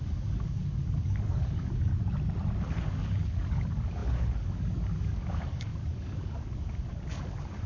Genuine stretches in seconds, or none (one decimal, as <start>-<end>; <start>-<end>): 1.9-2.6